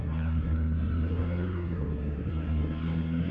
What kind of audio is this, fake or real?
fake